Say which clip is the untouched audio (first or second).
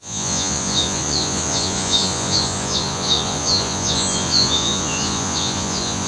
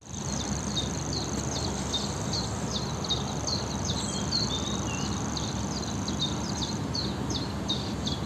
second